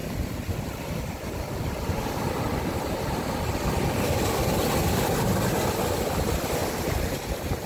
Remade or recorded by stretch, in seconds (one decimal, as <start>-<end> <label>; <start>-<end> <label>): 0.0-1.3 remade; 1.3-7.7 recorded